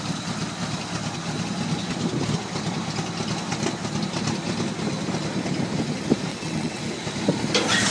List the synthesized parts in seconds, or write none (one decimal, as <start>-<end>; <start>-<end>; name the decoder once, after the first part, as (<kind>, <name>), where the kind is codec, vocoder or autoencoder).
6.3-6.8 (vocoder, WaveNeXt)